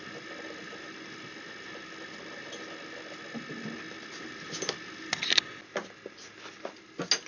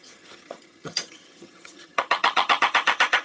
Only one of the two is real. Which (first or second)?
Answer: first